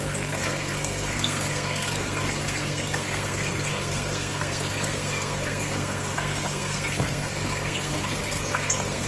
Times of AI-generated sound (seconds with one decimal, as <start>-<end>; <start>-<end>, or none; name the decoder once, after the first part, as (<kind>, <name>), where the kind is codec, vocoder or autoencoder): 0.0-9.1 (codec, SNAC)